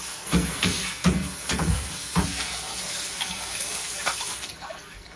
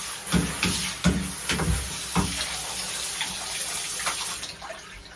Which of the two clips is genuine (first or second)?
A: second